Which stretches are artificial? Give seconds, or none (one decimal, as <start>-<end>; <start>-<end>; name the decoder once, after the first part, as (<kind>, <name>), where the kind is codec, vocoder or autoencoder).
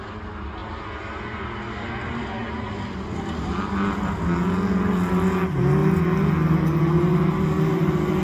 none